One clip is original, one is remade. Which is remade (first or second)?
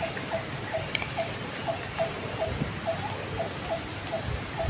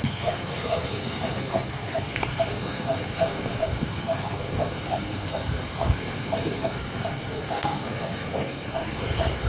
second